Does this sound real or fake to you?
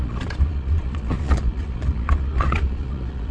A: fake